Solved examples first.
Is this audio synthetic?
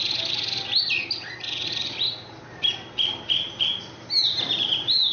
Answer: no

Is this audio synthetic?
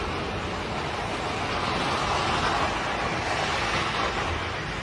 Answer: no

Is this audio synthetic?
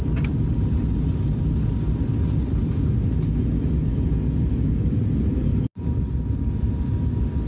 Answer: no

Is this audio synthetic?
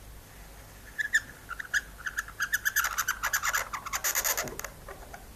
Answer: no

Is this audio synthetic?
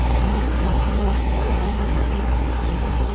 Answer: yes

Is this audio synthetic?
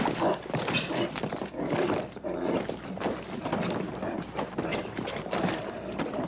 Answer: yes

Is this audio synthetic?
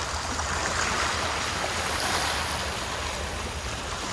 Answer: no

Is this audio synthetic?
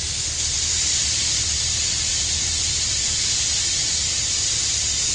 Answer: no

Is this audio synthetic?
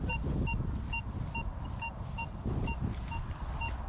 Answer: no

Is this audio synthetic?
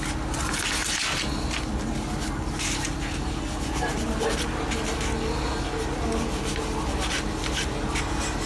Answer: no